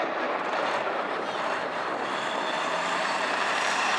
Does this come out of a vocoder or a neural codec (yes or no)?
yes